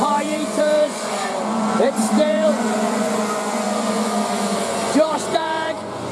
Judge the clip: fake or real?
fake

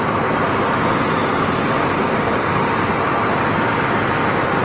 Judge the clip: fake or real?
real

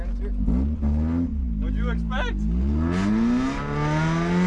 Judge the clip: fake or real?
real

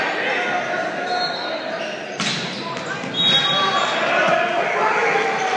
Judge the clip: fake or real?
real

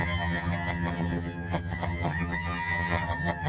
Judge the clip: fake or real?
fake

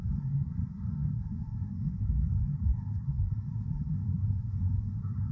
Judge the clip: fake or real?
fake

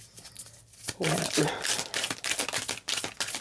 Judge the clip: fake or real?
real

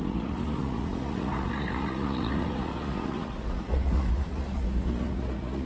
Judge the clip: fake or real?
fake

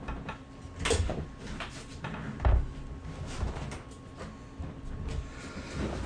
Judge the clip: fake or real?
real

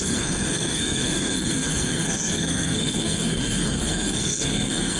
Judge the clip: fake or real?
fake